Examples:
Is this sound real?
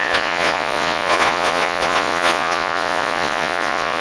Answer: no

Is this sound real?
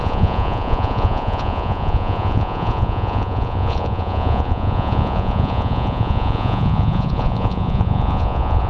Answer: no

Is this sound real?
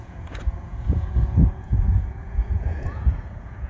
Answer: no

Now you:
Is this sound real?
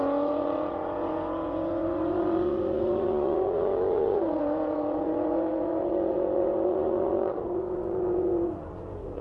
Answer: no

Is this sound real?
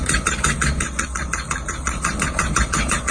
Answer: no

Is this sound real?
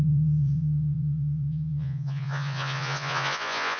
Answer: no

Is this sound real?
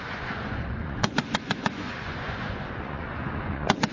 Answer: no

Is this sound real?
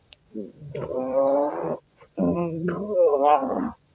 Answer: no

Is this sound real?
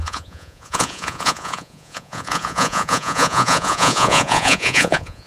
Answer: no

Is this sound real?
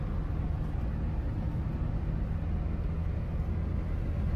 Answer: yes